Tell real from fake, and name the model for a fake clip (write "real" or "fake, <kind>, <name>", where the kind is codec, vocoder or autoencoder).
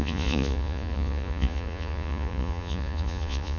fake, vocoder, Vocos